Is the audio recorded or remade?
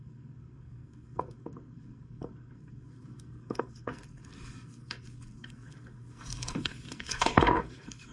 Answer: remade